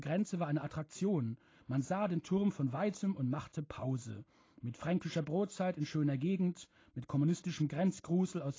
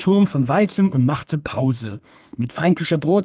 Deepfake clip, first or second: second